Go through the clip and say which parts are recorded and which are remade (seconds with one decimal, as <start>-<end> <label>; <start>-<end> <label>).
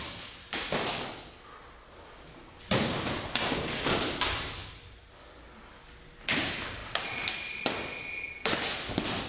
0.0-0.4 recorded; 0.4-1.1 remade; 1.1-9.3 recorded